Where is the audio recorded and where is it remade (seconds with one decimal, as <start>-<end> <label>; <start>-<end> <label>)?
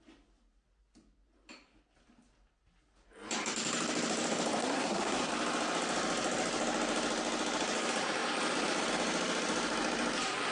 0.0-4.6 recorded; 4.6-5.3 remade; 5.3-10.5 recorded